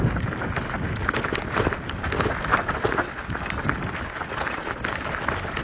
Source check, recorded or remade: recorded